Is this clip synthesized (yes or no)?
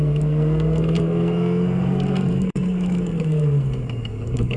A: yes